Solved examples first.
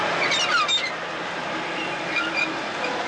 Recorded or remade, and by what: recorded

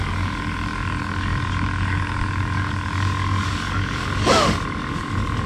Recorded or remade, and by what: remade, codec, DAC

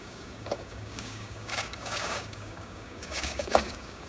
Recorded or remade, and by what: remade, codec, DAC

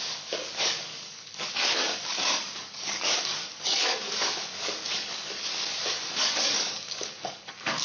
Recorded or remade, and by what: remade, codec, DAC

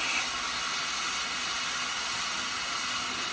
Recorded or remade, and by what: recorded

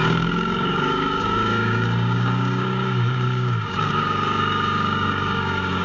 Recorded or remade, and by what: remade, codec, DAC